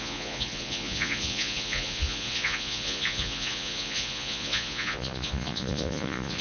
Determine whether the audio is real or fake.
fake